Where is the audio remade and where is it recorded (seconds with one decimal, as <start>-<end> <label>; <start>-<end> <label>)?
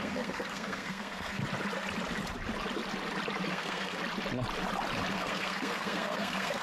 0.0-1.4 remade; 1.4-3.5 recorded; 3.5-4.0 remade; 4.0-5.1 recorded; 5.1-6.6 remade